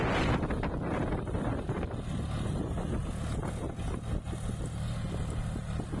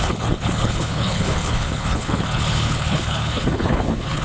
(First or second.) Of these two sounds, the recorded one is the first